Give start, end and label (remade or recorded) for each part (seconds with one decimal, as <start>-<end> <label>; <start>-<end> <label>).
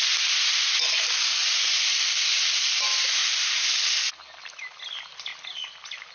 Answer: 0.0-1.4 recorded; 1.4-2.4 remade; 2.4-3.2 recorded; 3.2-3.8 remade; 3.8-6.1 recorded